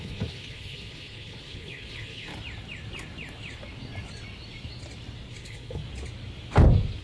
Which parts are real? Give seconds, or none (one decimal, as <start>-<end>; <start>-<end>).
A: 2.3-5.3; 5.8-7.0